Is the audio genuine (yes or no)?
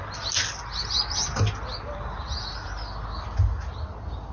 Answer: yes